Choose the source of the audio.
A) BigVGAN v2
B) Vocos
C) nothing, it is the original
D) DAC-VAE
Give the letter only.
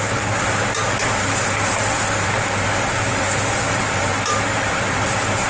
A